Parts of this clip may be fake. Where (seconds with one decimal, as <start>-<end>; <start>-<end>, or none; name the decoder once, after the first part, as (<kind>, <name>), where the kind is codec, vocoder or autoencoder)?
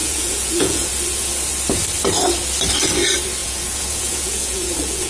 0.0-0.9 (vocoder, Vocos); 3.4-5.1